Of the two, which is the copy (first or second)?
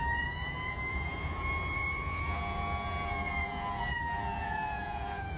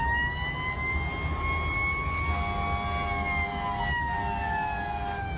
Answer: first